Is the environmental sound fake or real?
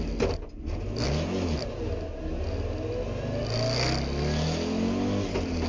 real